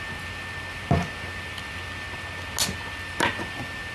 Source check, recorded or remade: recorded